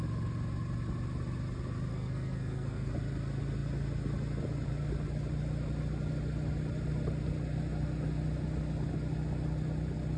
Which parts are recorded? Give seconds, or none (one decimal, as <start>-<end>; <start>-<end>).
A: 0.0-1.9; 2.9-10.2